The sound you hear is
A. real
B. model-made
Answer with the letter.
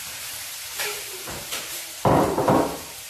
B